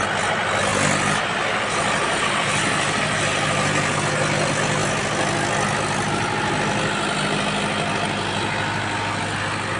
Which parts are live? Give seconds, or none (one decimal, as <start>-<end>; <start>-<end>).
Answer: 0.0-9.8